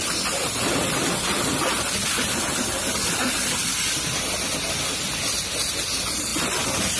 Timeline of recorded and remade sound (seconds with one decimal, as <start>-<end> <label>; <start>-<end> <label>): 0.0-7.0 recorded